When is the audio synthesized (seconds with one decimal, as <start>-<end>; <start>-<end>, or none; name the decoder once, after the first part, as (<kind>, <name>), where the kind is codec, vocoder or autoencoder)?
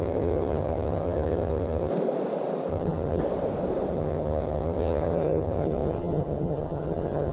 0.0-1.9 (vocoder, HiFi-GAN); 2.7-3.2; 3.9-7.3